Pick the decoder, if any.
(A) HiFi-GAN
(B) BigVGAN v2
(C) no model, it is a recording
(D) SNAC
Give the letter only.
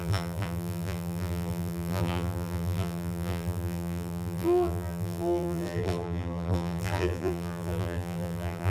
B